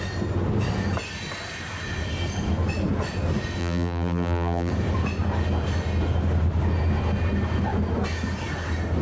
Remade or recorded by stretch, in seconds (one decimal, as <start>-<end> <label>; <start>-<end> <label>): 0.0-3.6 recorded; 3.6-4.7 remade; 4.7-9.0 recorded

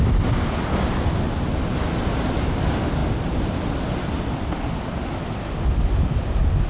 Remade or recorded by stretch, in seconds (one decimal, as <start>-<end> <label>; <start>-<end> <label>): 0.0-3.0 recorded; 3.0-5.3 remade; 5.3-6.7 recorded

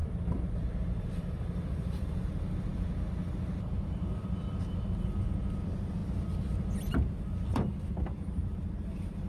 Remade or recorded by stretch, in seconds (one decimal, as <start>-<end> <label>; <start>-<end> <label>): 0.0-2.2 remade; 2.2-9.3 recorded

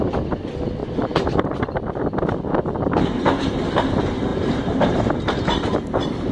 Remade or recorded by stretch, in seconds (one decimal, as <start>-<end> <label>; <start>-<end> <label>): 0.0-0.8 recorded; 0.8-1.9 remade; 1.9-4.3 recorded; 4.3-5.1 remade; 5.1-6.3 recorded

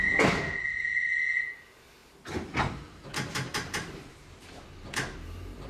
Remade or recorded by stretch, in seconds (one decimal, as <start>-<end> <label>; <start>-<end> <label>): 0.0-3.5 recorded; 3.5-4.4 remade; 4.4-5.7 recorded

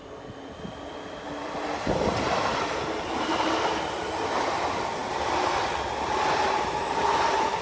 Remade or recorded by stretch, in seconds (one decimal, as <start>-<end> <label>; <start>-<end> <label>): 0.0-1.4 recorded; 1.4-4.4 remade; 4.4-7.6 recorded

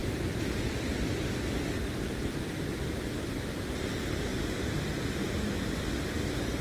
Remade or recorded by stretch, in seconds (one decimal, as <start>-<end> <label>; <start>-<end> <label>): 0.0-6.6 recorded

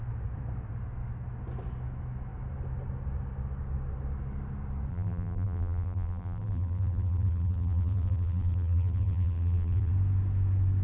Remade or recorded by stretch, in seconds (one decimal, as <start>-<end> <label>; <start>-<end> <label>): 0.0-4.9 recorded; 4.9-9.9 remade; 9.9-10.8 recorded